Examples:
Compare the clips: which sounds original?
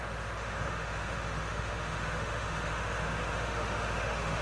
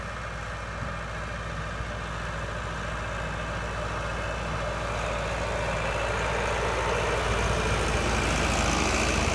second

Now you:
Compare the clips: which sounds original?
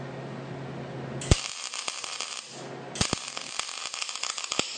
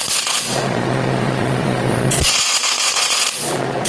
first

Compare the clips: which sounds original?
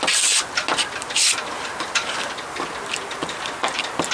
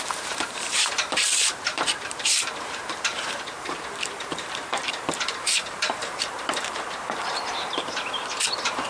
first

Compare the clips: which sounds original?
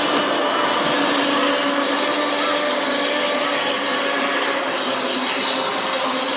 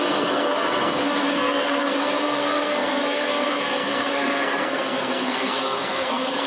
first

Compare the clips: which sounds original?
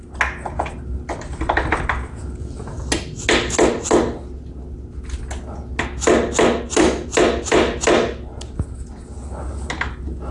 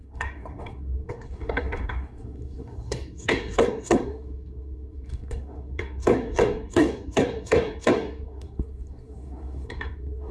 first